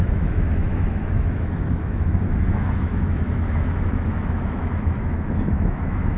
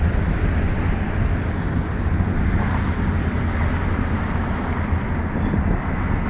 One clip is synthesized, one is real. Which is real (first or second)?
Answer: second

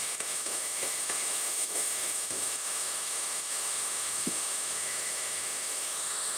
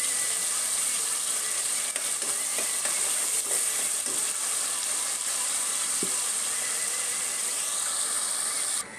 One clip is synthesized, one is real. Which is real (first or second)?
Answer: second